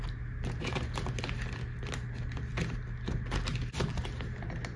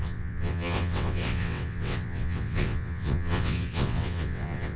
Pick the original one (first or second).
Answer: first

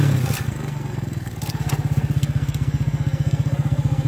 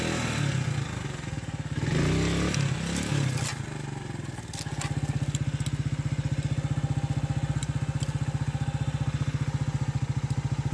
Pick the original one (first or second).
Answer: second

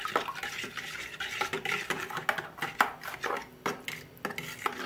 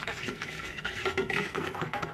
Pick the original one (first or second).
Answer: first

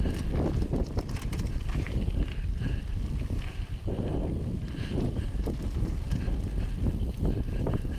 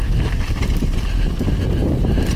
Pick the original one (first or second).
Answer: second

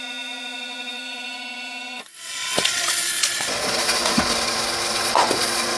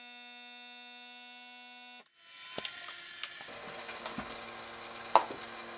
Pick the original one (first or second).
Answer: second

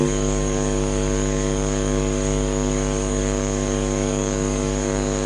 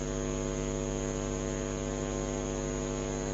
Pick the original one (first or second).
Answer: second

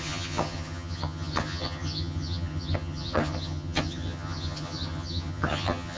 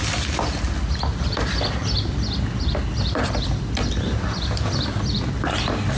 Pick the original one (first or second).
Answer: second